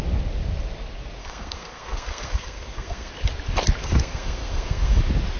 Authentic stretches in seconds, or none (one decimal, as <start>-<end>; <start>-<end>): 0.0-1.2; 3.1-3.8; 5.0-5.4